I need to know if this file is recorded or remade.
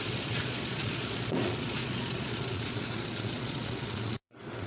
remade